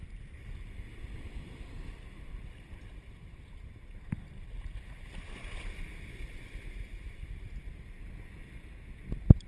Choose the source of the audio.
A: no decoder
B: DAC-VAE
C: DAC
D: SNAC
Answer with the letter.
A